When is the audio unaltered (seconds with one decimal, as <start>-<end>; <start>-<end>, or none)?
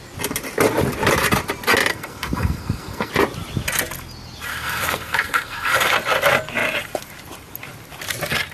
0.0-1.9; 3.1-4.5; 5.9-8.5